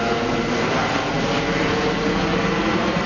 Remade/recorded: recorded